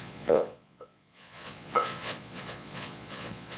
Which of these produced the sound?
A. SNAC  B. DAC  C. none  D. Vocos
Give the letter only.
D